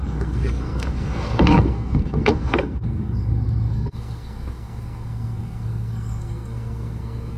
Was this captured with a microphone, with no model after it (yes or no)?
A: no